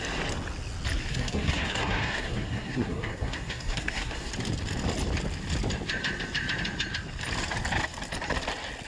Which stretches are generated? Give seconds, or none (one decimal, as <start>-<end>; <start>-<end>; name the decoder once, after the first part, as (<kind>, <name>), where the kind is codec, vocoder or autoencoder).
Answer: 1.1-4.3 (codec, SNAC)